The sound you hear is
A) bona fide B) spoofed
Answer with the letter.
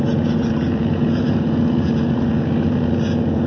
B